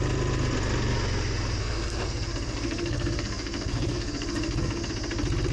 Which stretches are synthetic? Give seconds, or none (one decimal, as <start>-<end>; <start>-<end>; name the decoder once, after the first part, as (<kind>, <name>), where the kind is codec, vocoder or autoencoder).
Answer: 1.6-4.9 (codec, SNAC)